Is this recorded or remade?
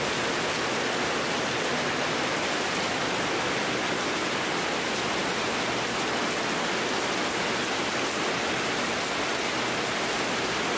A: recorded